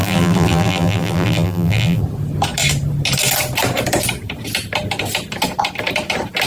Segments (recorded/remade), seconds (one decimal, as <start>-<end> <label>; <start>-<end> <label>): 0.0-2.0 remade; 2.0-6.5 recorded